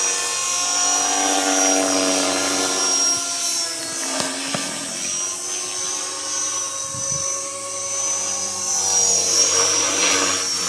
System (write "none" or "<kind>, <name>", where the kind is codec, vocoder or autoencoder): none